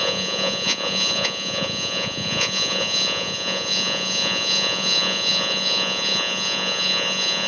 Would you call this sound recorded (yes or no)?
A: no